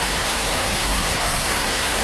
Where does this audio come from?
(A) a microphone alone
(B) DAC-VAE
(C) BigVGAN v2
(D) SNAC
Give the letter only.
D